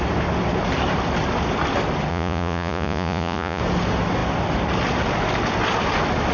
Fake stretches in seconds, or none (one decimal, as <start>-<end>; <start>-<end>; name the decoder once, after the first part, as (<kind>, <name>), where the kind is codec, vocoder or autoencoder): 2.1-3.6 (vocoder, Vocos)